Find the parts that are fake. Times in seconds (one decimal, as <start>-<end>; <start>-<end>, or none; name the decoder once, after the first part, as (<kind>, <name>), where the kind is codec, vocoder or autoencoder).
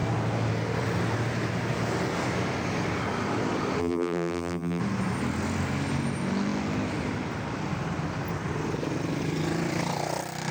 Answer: 3.8-4.8 (vocoder, BigVGAN v2)